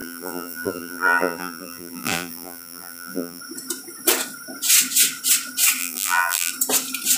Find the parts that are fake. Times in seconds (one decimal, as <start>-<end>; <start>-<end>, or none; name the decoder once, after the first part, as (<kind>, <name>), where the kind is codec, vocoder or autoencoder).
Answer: 0.0-3.4 (vocoder, BigVGAN v2); 5.8-6.5